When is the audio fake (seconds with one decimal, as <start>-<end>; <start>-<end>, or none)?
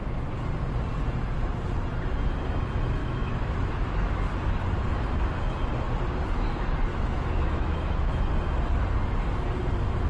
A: 3.0-4.2; 6.9-8.3